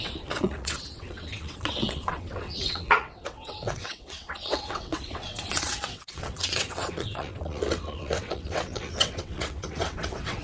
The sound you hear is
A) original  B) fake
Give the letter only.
B